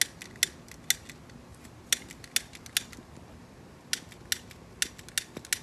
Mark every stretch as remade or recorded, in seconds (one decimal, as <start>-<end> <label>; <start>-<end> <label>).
0.0-5.6 recorded

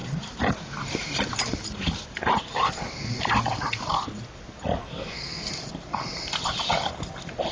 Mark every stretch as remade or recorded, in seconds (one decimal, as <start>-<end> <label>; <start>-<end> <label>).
0.0-4.8 recorded; 4.8-5.5 remade; 5.5-7.5 recorded

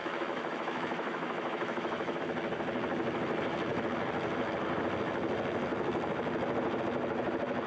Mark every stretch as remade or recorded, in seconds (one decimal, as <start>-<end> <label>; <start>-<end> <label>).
0.0-2.2 remade; 2.2-7.7 recorded